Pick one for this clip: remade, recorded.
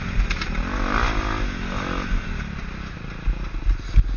recorded